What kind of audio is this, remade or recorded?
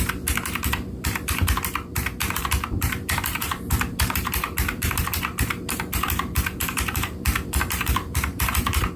remade